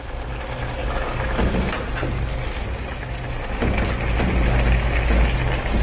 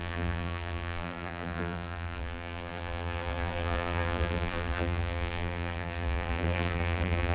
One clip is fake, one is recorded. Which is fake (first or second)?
second